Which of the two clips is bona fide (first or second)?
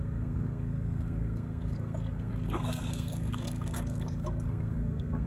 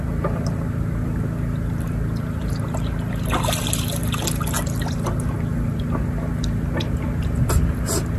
second